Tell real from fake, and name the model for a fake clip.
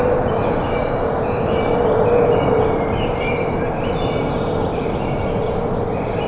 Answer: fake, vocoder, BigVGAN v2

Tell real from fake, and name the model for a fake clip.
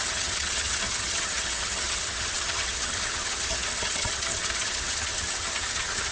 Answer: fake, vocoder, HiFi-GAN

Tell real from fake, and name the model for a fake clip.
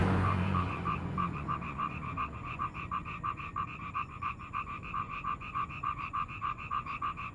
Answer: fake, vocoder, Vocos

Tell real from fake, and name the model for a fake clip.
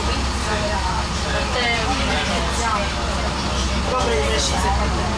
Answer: real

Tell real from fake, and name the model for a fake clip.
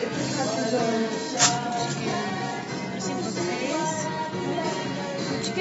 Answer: real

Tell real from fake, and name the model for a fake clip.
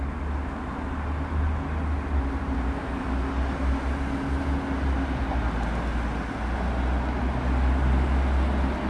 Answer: real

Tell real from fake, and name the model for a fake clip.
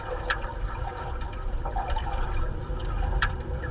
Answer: fake, vocoder, BigVGAN v2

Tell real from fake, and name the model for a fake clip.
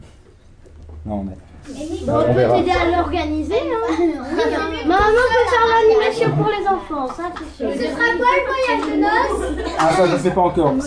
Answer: real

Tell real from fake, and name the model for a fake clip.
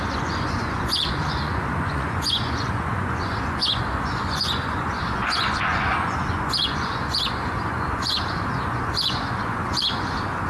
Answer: fake, vocoder, Vocos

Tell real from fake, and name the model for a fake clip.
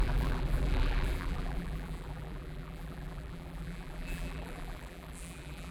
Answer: fake, vocoder, BigVGAN v2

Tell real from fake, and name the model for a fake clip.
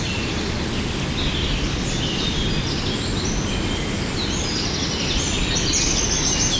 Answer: real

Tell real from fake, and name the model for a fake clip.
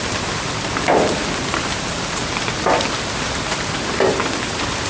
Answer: real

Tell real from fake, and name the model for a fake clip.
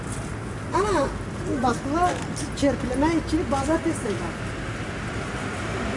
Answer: real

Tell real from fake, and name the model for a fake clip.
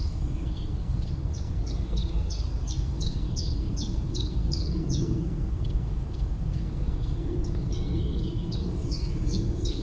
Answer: fake, codec, SNAC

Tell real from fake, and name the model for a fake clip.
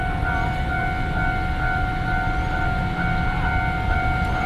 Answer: real